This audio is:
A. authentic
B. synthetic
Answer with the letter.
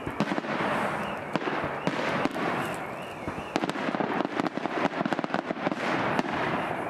A